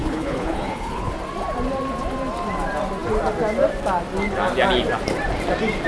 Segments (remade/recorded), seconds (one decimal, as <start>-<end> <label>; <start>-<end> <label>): 0.0-1.1 remade; 1.1-5.9 recorded